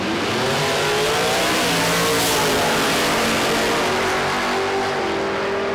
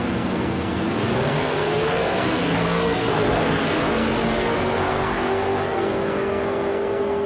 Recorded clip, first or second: first